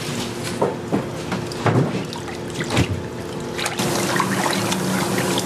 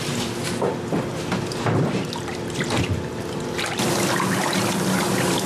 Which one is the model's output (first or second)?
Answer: second